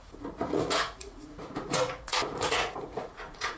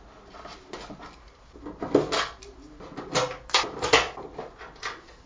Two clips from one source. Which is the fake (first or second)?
first